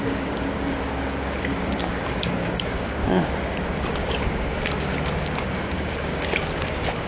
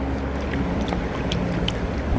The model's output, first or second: first